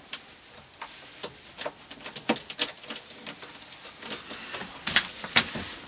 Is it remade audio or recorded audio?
recorded